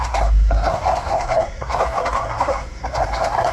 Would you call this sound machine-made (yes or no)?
yes